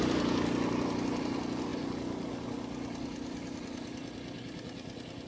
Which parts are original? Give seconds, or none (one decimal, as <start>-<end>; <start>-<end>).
0.0-5.3